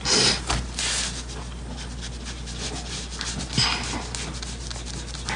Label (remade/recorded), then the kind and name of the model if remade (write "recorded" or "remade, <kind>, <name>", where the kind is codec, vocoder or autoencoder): recorded